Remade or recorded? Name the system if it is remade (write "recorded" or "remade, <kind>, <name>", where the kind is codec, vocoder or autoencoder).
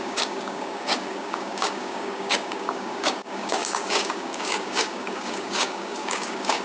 remade, codec, DAC